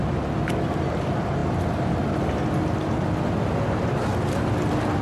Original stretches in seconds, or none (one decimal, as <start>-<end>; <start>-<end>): 0.0-5.0